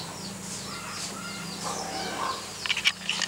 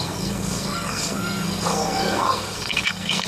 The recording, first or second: first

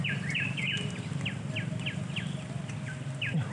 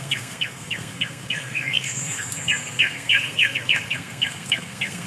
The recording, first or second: first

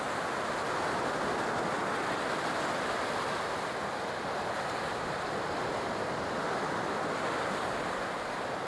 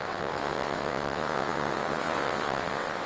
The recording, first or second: first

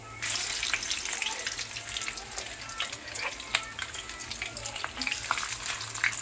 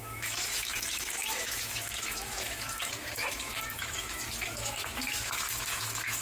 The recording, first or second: first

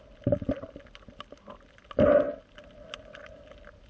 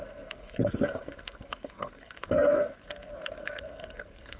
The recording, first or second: first